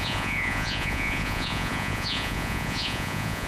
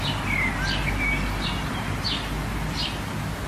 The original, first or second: second